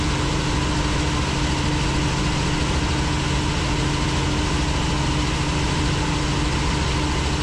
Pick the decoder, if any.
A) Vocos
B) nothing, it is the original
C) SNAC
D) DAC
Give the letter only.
B